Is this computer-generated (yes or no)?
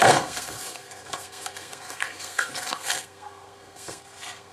yes